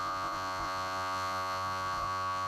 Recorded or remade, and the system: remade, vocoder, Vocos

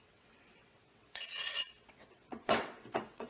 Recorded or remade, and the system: remade, vocoder, WaveNeXt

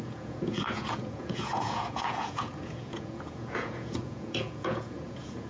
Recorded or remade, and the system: remade, vocoder, Vocos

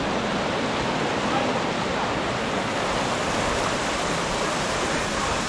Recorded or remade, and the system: recorded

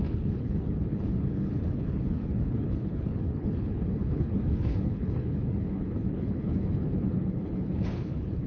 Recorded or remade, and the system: remade, codec, HILCodec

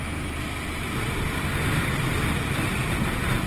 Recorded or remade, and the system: recorded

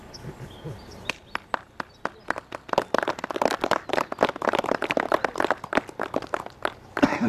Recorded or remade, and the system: recorded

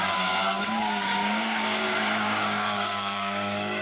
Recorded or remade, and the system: remade, codec, DAC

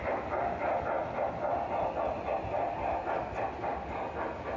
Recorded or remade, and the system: recorded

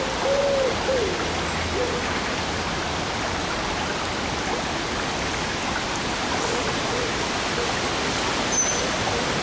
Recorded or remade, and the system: recorded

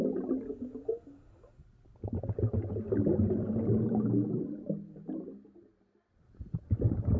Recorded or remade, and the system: recorded